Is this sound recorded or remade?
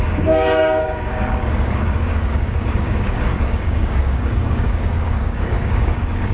remade